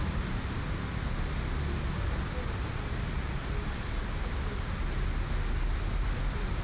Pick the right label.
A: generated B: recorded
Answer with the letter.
B